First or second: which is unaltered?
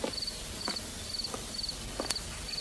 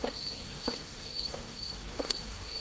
first